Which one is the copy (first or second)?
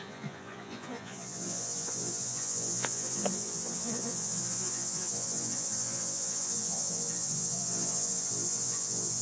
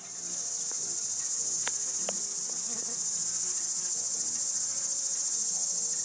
first